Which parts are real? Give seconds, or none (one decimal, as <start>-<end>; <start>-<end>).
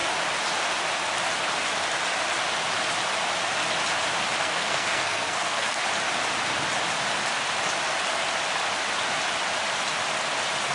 0.0-4.4; 5.8-10.7